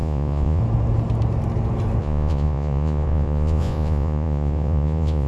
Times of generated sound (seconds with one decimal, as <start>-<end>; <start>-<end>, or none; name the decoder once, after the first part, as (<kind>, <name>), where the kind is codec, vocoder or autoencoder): 0.0-0.6 (vocoder, Vocos); 2.0-5.3

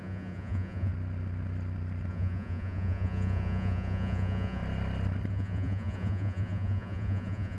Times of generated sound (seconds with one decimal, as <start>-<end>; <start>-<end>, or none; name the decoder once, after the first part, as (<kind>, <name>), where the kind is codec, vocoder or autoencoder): 0.0-0.9 (vocoder, Vocos); 2.1-4.6; 5.3-7.6

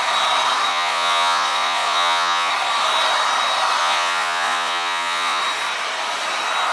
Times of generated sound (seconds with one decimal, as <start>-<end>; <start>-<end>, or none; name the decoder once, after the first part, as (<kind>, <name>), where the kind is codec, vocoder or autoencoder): 0.7-2.5 (vocoder, Vocos); 3.8-5.4

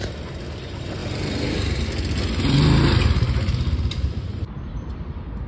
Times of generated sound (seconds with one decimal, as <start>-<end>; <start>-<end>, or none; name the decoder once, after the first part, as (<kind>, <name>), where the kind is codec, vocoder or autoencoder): none

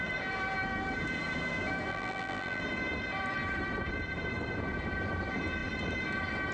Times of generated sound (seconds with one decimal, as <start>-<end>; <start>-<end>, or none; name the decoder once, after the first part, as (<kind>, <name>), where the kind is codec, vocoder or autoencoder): 1.9-2.6 (vocoder, BigVGAN v2)

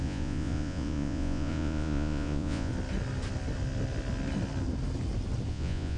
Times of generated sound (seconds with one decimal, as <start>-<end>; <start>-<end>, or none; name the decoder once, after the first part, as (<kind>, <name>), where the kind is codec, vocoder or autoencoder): 0.0-2.7 (vocoder, Vocos); 5.5-6.0

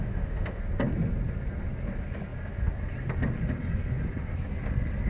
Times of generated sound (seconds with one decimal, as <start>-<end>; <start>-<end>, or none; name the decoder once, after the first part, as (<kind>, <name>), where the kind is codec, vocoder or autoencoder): 0.0-0.6 (autoencoder, DAC-VAE)

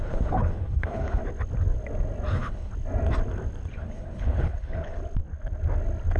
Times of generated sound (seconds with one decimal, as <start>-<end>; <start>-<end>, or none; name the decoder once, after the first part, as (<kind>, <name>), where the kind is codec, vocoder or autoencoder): 0.0-1.2 (codec, HILCodec); 2.3-2.7; 3.7-5.0